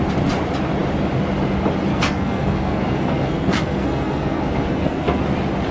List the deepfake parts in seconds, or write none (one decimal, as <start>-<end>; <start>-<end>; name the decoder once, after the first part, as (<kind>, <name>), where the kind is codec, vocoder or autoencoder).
1.9-5.2 (codec, SNAC)